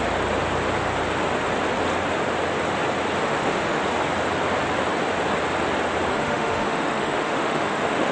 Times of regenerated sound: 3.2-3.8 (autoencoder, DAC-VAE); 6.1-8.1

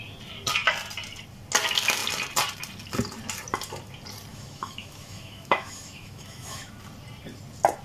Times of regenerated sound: 4.3-6.7 (autoencoder, DAC-VAE)

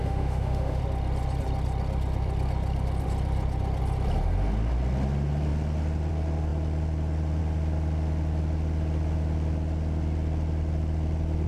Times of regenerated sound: 0.0-0.8 (autoencoder, DAC-VAE)

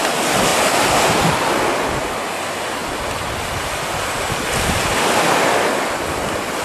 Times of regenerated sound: none

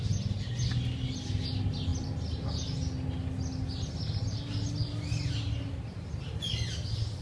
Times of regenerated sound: none